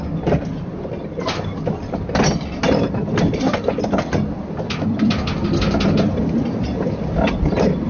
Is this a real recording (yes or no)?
yes